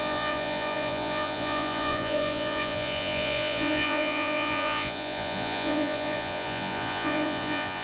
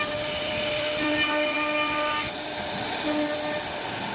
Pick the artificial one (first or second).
first